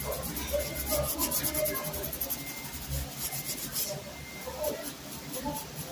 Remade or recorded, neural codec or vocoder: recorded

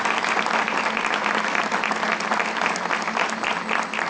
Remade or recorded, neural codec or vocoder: recorded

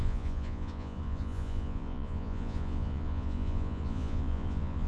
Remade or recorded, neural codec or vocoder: remade, vocoder, Vocos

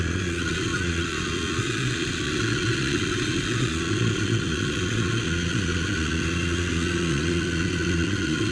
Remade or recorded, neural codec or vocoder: remade, vocoder, Vocos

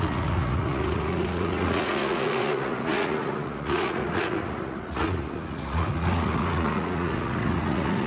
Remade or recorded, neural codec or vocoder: remade, vocoder, Vocos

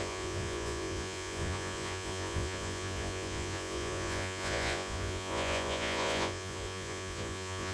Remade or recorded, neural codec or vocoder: remade, vocoder, Vocos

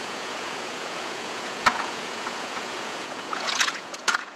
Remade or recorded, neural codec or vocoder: remade, vocoder, Vocos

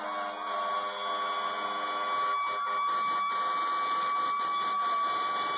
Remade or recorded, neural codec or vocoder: recorded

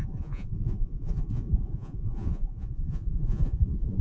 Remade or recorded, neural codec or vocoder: remade, vocoder, Vocos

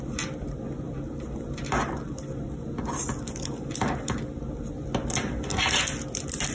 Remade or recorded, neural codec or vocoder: recorded